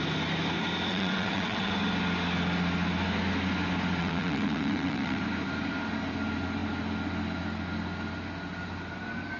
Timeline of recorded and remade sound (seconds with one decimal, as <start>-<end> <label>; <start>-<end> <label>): 0.0-0.9 recorded; 0.9-1.7 remade; 1.7-4.0 recorded; 4.0-5.2 remade; 5.2-9.4 recorded